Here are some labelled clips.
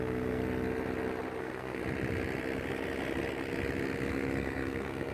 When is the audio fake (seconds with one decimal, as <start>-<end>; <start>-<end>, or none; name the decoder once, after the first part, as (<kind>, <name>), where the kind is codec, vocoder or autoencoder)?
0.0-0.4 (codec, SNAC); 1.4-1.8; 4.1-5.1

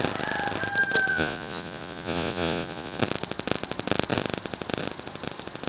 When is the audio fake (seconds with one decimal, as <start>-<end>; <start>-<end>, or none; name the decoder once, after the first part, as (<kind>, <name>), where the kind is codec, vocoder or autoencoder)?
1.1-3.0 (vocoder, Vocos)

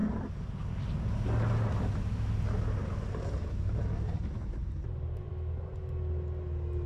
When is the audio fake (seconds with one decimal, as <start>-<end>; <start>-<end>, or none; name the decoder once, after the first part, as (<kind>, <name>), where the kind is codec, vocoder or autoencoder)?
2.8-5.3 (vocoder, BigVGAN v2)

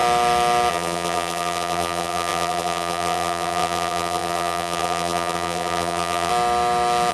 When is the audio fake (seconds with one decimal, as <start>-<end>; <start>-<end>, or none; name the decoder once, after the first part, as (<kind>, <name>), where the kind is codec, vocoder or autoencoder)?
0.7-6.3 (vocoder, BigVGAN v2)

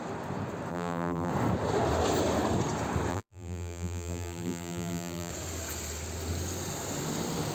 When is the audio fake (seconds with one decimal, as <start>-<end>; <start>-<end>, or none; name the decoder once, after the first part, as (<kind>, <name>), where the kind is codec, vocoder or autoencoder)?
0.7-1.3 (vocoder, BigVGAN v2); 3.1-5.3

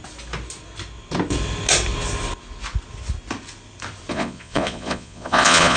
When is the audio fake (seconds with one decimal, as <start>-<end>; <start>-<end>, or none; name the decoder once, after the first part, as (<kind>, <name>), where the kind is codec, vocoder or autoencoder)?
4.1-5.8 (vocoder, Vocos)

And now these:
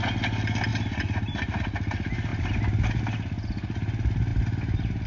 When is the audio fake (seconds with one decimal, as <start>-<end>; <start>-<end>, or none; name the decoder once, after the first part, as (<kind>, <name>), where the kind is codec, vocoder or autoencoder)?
0.7-1.6 (vocoder, BigVGAN v2); 4.3-5.1